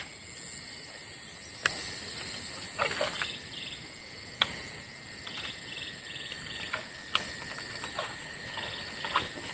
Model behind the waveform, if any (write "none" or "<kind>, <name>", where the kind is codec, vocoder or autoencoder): none